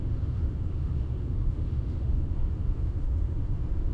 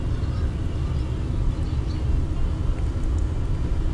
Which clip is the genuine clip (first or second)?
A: second